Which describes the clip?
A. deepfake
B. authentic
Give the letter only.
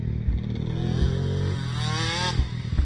B